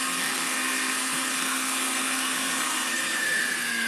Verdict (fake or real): fake